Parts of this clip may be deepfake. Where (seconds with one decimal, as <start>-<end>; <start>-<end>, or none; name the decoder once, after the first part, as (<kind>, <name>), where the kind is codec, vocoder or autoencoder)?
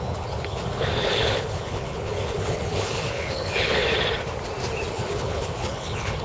0.0-3.8 (codec, HILCodec); 4.9-6.2